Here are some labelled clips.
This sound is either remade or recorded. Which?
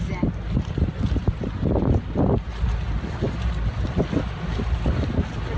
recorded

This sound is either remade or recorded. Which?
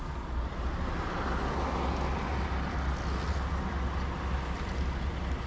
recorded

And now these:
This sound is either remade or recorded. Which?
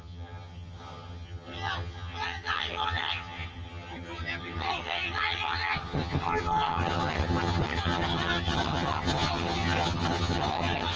remade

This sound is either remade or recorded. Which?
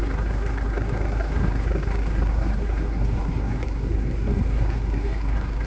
remade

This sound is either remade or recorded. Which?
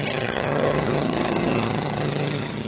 remade